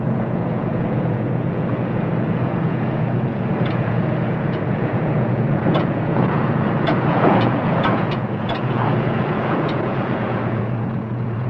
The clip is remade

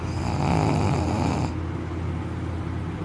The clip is recorded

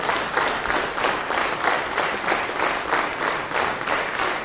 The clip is recorded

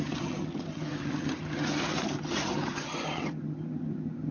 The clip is remade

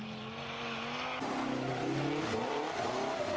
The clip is recorded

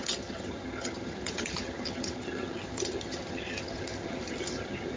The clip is remade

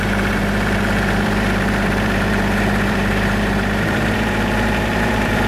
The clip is remade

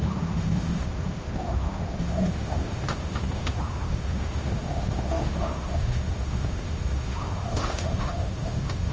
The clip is remade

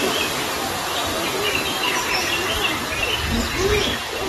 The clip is recorded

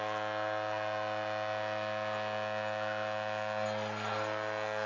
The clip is recorded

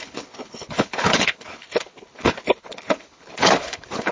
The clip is remade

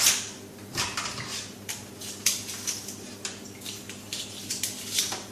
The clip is recorded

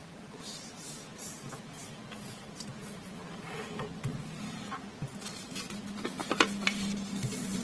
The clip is recorded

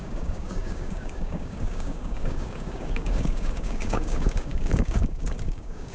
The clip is remade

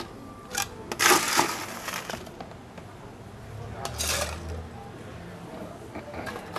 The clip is recorded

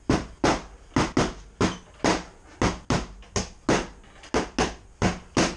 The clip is recorded